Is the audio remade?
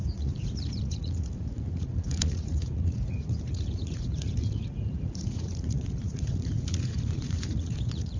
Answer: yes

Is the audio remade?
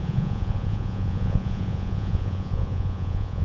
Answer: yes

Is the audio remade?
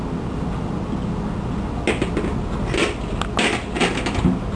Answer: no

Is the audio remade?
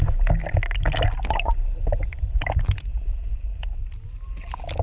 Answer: no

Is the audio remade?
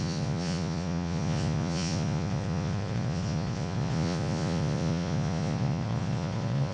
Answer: yes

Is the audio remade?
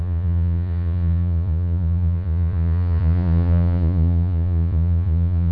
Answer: yes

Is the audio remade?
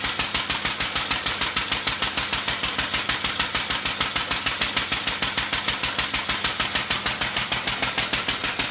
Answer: no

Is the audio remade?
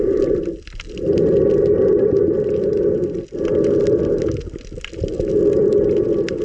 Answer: no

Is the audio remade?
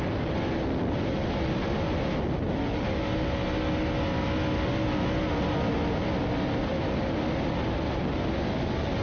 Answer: no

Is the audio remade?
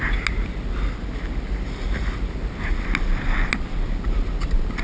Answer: no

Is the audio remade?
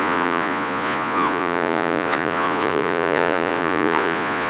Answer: yes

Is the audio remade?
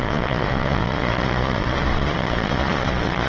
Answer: yes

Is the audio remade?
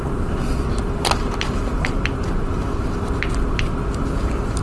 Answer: no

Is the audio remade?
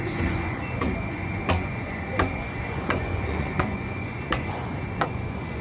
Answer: yes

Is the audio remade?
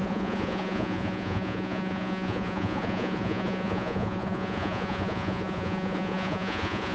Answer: yes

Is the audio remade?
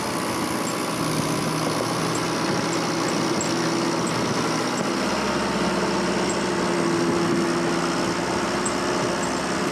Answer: no